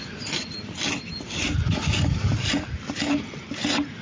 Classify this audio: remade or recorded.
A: recorded